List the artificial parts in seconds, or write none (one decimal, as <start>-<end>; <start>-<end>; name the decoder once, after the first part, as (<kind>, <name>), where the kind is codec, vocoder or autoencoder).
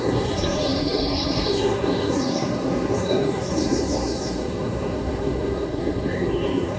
0.0-6.8 (codec, SNAC)